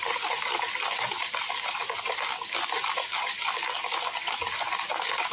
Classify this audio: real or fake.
real